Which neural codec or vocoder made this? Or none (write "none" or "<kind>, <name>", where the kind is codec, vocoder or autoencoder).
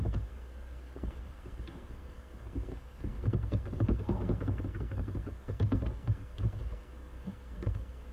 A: codec, SNAC